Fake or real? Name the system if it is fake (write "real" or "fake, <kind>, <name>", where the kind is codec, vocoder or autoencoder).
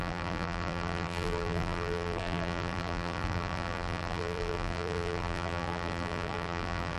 fake, vocoder, BigVGAN v2